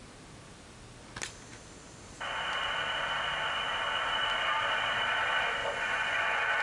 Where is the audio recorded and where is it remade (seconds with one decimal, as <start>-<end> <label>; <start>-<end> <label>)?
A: 0.0-5.6 recorded; 5.6-6.6 remade